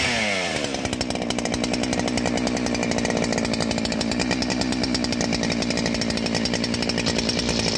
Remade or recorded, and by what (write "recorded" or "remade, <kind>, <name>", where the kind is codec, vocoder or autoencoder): recorded